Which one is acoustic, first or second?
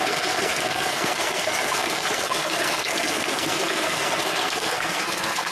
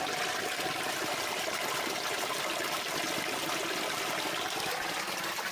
second